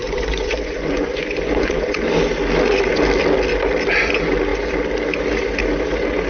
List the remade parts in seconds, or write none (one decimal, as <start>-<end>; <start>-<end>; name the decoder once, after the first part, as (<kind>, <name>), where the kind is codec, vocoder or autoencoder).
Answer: 0.0-2.0 (vocoder, Vocos)